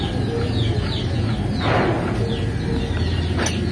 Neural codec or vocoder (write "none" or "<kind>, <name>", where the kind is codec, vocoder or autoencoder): none